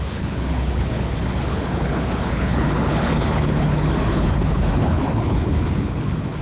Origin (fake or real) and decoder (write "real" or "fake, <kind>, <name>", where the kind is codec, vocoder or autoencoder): fake, codec, HILCodec